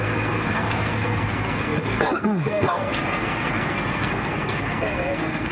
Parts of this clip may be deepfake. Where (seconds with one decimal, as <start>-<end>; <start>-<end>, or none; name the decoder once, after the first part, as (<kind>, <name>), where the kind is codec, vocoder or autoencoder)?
0.0-5.5 (codec, SNAC)